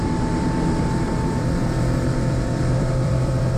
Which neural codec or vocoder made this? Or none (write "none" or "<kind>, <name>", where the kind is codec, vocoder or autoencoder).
vocoder, BigVGAN v2